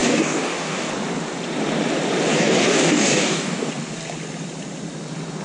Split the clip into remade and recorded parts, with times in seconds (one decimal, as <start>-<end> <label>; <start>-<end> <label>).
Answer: 0.0-0.9 remade; 0.9-2.3 recorded; 2.3-3.7 remade; 3.7-5.4 recorded